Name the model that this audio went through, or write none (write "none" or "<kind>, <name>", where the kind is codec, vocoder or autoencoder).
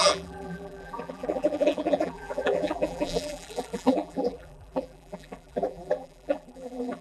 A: vocoder, BigVGAN v2